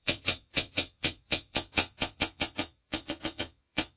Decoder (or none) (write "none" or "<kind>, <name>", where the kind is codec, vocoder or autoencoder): vocoder, Vocos